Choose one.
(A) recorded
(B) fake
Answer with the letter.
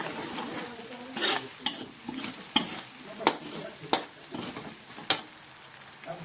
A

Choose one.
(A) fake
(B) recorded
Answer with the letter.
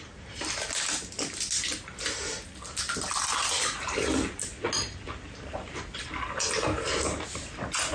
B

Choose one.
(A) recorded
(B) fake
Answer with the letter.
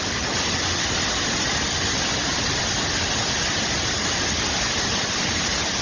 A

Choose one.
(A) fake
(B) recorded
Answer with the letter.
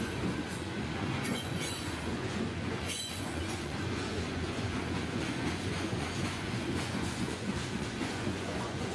A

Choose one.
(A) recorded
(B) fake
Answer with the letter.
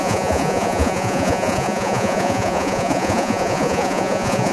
B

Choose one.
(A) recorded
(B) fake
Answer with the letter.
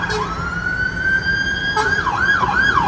A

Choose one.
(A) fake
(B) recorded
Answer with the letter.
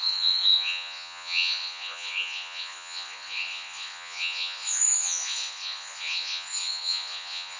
A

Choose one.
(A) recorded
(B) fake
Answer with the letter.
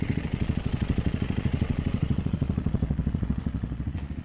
B